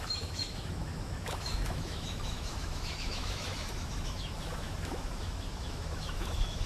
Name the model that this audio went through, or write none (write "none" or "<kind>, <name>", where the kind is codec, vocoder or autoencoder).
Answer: autoencoder, DAC-VAE